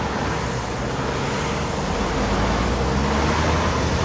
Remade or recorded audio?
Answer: recorded